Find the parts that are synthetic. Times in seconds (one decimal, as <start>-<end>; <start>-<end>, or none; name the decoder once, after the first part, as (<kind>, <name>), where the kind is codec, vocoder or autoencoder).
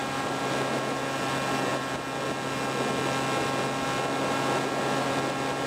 none